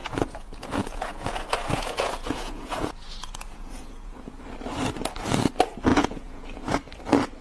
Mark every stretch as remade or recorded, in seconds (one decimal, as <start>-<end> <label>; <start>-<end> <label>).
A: 0.0-4.4 remade; 4.4-5.9 recorded; 5.9-6.7 remade; 6.7-7.4 recorded

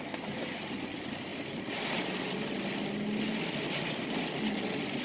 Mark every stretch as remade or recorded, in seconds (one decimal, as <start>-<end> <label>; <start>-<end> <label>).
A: 0.0-5.0 recorded